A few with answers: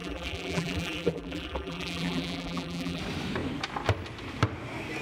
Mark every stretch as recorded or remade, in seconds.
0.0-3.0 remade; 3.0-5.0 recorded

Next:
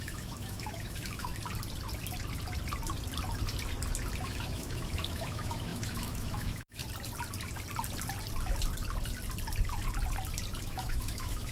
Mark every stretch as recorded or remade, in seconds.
0.0-1.3 remade; 1.3-4.2 recorded; 4.2-6.8 remade; 6.8-10.6 recorded; 10.6-11.5 remade

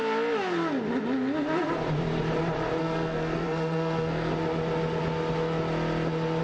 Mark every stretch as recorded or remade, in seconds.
0.0-2.8 recorded; 2.8-4.3 remade; 4.3-6.4 recorded

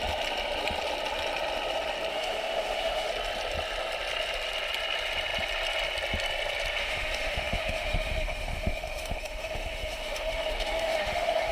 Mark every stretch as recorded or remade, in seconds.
0.0-2.1 recorded; 2.1-3.1 remade; 3.1-6.8 recorded; 6.8-11.5 remade

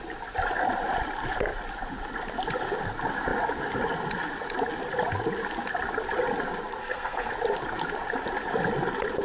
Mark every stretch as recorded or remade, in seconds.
0.0-6.8 recorded; 6.8-7.3 remade; 7.3-9.2 recorded

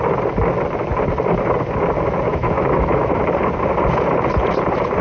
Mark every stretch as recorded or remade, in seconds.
0.0-2.3 recorded; 2.3-3.2 remade; 3.2-5.0 recorded